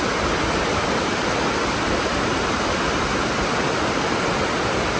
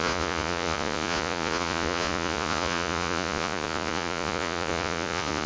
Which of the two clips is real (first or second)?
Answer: first